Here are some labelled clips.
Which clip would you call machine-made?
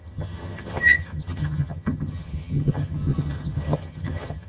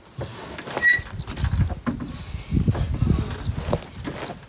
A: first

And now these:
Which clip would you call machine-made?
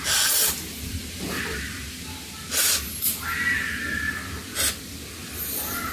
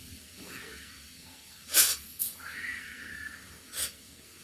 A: second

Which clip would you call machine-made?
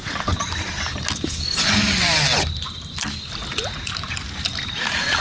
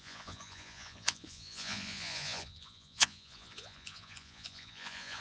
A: second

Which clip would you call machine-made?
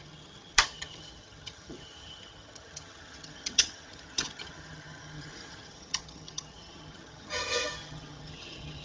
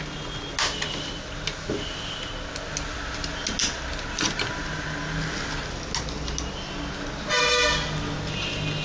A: first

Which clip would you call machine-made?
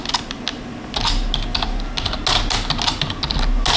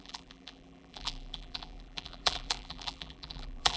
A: second